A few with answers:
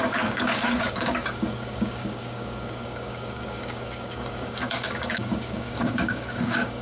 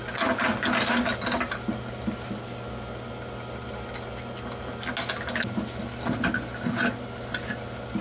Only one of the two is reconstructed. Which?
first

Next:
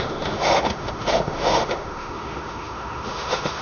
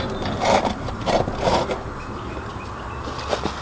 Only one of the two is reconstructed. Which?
first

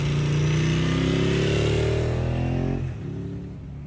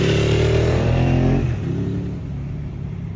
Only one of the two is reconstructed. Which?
second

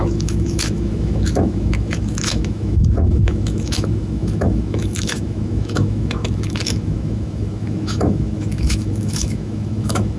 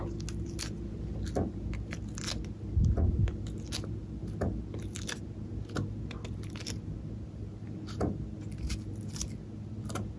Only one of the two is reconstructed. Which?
first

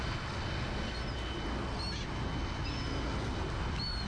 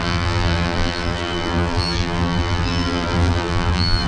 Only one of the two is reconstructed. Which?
second